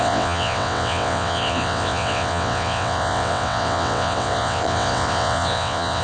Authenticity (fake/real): fake